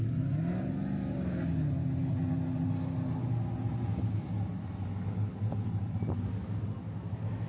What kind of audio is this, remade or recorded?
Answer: recorded